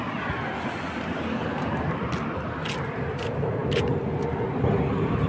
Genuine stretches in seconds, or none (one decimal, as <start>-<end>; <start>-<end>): 0.0-5.3